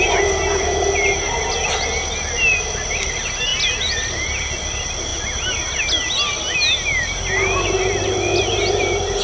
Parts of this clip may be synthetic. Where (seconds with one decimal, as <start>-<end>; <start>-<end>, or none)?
none